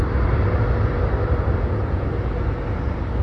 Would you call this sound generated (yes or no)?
no